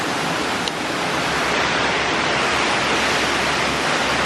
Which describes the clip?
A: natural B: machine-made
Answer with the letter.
A